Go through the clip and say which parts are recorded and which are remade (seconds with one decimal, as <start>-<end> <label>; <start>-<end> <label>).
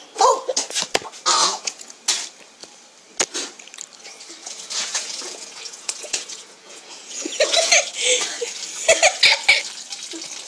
0.0-1.4 recorded; 1.4-2.0 remade; 2.0-4.4 recorded; 4.4-7.7 remade; 7.7-10.5 recorded